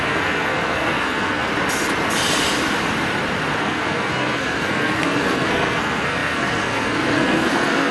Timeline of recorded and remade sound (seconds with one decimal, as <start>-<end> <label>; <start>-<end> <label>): 0.0-1.5 remade; 1.5-3.6 recorded; 3.6-7.9 remade